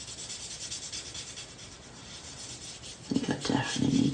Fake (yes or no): no